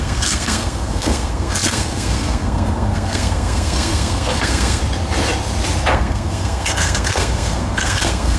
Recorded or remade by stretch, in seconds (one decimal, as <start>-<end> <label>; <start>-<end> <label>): 0.0-4.8 remade; 4.8-5.9 recorded; 5.9-8.4 remade